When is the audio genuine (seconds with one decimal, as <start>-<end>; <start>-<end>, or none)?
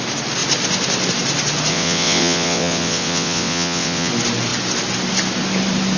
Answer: 0.0-1.7; 4.1-6.0